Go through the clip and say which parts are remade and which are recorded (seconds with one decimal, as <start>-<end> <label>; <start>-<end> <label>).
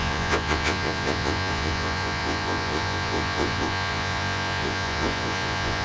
0.0-5.8 remade